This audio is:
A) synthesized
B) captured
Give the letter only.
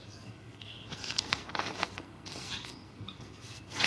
A